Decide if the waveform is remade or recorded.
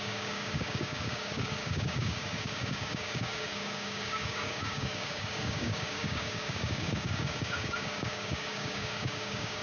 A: remade